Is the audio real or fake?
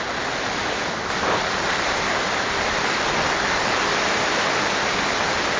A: real